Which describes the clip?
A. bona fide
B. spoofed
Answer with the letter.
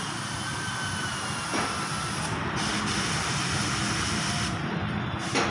A